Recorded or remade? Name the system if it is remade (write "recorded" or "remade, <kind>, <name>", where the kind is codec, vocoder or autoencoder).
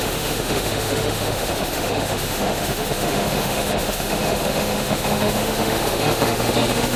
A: remade, autoencoder, DAC-VAE